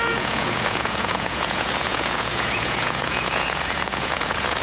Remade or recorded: remade